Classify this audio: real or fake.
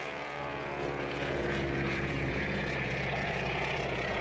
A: fake